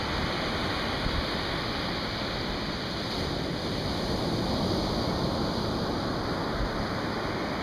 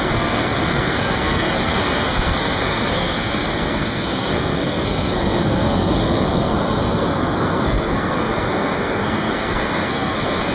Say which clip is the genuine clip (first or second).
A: first